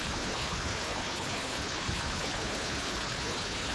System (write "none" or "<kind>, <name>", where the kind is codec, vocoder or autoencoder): codec, HILCodec